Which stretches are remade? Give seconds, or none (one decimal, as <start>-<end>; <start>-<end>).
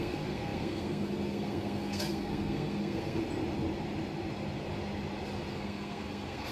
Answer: 0.0-3.2; 5.5-6.5